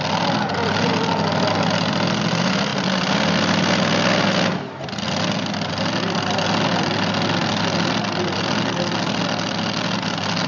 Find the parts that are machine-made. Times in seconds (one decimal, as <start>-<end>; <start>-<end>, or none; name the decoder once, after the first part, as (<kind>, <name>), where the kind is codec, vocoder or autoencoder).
none